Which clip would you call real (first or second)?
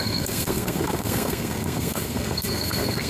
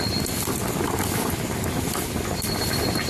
second